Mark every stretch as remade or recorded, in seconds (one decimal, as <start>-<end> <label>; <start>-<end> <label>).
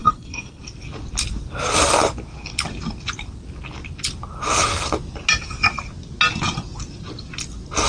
0.0-0.6 remade; 0.6-7.9 recorded